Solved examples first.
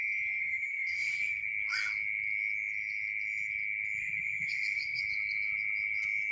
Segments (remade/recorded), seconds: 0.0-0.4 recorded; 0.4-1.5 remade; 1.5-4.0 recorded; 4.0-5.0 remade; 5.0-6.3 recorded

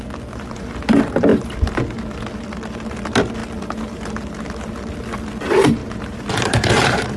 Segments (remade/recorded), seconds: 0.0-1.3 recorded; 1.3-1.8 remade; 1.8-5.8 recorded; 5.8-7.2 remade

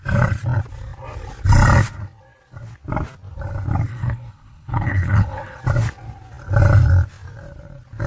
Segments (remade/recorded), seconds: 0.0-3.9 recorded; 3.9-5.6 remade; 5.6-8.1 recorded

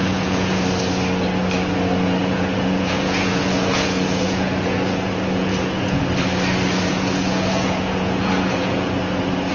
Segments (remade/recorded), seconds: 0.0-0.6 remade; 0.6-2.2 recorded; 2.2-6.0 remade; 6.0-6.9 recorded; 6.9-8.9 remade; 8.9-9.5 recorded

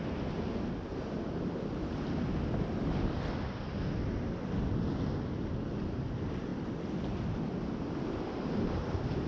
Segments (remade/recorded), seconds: 0.0-9.3 recorded

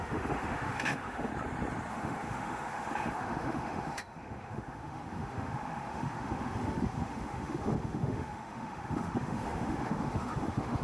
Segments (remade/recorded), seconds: 0.0-1.3 remade; 1.3-1.9 recorded; 1.9-10.8 remade